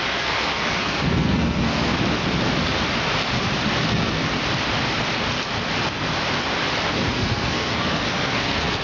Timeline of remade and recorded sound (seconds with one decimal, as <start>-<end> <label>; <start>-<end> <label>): 0.0-1.9 remade; 1.9-3.8 recorded; 3.8-4.2 remade; 4.2-6.9 recorded; 6.9-8.8 remade